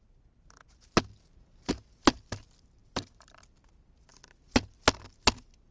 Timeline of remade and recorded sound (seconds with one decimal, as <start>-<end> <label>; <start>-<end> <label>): 0.0-2.8 recorded; 2.8-3.4 remade; 3.4-5.7 recorded